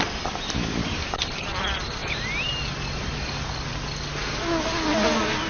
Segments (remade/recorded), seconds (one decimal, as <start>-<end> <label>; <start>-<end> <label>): 0.0-5.5 recorded